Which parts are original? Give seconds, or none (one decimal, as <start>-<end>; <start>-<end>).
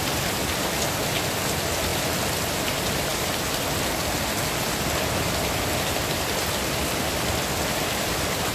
3.1-4.3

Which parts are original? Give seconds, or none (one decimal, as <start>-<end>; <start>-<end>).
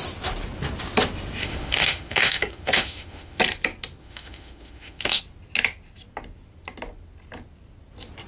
0.0-1.4; 3.4-4.0; 5.2-8.3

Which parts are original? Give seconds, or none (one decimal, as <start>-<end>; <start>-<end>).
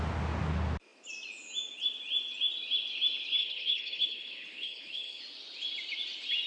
0.0-3.4; 5.2-6.5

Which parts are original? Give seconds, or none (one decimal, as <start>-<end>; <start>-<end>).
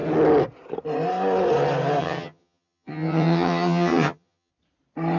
0.0-2.0; 4.5-5.2